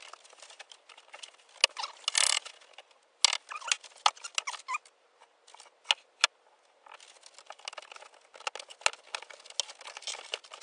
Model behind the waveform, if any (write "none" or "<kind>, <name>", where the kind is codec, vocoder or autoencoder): none